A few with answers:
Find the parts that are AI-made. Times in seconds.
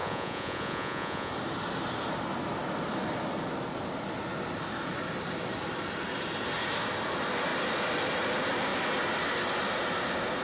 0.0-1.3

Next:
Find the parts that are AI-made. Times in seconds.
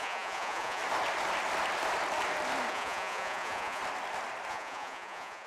0.0-0.8; 2.7-3.8; 4.5-5.5